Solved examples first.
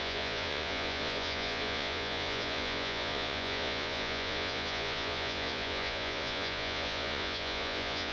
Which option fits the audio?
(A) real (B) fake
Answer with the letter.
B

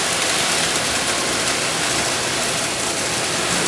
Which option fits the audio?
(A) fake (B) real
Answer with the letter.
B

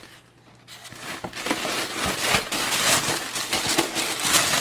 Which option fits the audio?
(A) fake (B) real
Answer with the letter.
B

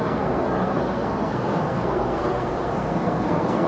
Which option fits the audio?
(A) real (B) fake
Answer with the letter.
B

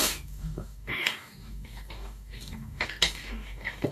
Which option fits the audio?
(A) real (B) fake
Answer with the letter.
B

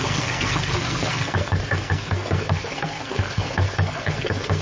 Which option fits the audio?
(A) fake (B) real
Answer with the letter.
A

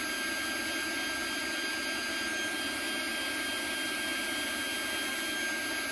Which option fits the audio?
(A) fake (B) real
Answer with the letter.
B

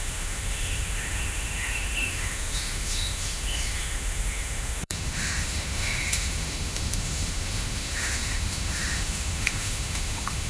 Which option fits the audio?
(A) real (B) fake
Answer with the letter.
B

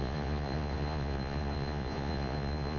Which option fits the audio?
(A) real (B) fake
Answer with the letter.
B